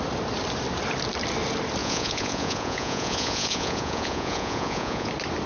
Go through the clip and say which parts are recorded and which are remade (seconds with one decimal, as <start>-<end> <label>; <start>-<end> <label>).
0.0-1.8 recorded; 1.8-5.1 remade; 5.1-5.5 recorded